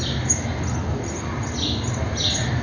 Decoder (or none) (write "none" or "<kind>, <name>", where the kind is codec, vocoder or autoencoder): none